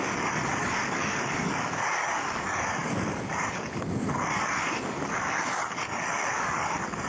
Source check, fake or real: fake